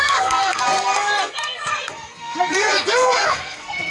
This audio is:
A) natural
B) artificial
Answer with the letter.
B